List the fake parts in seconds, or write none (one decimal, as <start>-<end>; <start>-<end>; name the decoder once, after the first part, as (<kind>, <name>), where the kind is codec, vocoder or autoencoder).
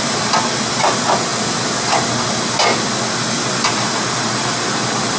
none